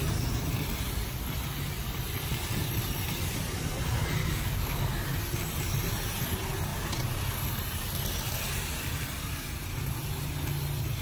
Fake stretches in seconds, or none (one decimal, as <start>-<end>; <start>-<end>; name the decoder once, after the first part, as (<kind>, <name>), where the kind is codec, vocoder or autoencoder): 4.2-4.8 (codec, DAC)